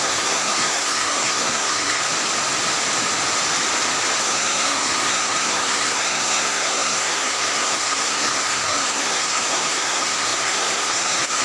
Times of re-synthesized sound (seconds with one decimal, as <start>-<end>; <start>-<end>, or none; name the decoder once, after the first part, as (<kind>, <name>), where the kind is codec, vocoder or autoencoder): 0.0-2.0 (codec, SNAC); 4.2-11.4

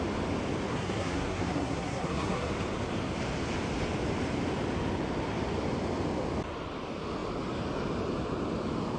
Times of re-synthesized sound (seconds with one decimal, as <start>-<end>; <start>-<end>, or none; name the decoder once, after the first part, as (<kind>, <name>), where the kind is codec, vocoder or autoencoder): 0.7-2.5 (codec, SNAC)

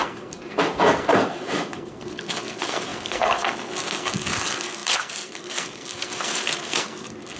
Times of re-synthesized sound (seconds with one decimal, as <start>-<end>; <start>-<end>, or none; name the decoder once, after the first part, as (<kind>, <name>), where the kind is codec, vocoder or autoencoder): 0.0-7.4 (codec, SNAC)

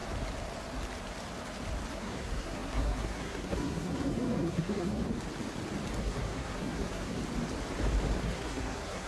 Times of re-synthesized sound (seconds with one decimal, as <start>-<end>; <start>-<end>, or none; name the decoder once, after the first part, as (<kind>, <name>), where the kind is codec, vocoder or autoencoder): 1.9-5.0 (codec, SNAC); 6.0-7.2; 8.2-9.1

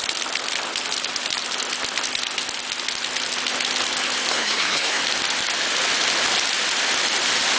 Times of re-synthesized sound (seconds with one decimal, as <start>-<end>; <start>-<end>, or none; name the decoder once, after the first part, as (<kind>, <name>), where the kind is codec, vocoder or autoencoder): 4.3-5.0 (codec, SNAC)

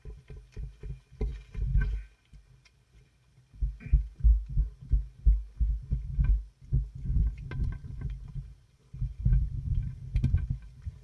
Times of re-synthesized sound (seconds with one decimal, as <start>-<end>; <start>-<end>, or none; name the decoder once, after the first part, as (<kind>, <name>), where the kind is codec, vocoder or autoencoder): none